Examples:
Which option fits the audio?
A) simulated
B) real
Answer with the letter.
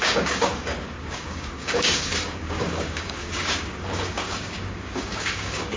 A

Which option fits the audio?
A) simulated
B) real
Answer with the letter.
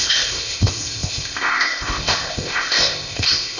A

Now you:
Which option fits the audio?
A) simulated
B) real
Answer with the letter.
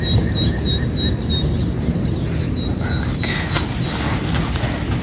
B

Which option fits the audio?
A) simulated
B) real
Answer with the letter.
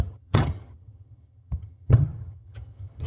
A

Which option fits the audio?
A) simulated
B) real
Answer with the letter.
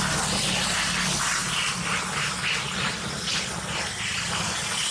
B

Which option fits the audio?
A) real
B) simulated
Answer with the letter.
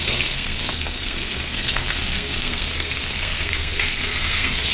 B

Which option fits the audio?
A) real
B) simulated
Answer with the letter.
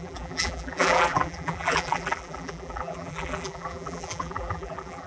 B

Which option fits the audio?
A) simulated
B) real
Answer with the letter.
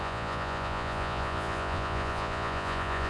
A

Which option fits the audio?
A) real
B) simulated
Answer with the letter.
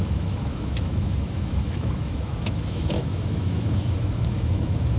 B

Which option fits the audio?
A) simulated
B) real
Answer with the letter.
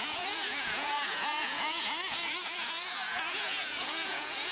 A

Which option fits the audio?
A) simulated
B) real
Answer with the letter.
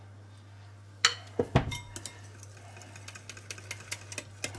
B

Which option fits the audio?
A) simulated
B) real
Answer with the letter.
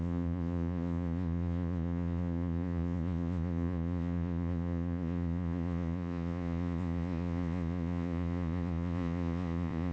A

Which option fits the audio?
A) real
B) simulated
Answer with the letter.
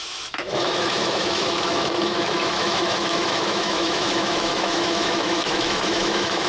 B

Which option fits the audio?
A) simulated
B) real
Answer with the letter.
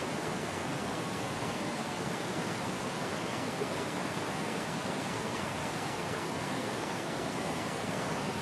A